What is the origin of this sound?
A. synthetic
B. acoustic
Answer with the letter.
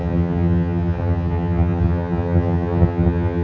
A